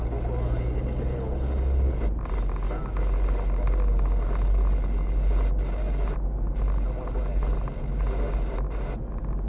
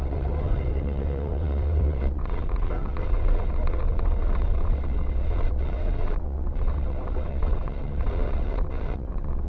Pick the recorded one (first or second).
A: first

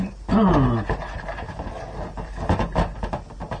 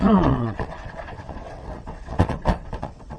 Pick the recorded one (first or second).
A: first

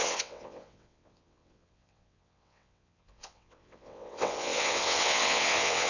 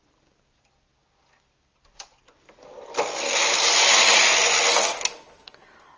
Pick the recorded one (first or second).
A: second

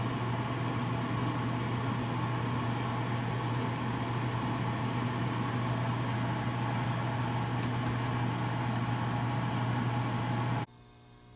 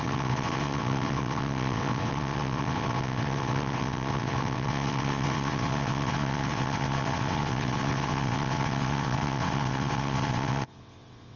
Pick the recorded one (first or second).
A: first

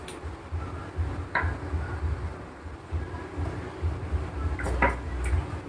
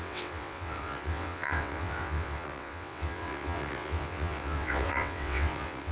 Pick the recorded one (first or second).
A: first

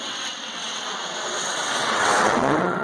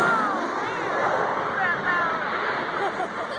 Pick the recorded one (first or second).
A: second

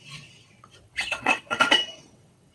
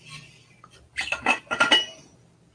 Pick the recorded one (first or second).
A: second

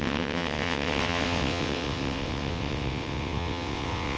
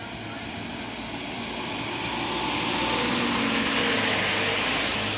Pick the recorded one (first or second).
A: second